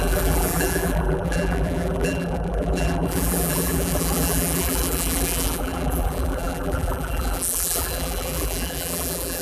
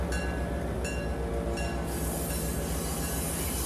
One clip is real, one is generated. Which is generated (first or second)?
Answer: first